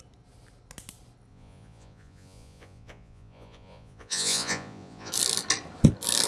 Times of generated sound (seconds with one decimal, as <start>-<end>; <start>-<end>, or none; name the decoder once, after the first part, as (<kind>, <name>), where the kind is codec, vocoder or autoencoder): 1.3-5.1 (vocoder, Vocos)